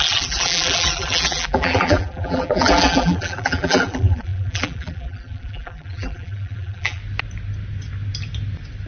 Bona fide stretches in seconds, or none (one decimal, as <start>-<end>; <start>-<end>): 7.0-8.9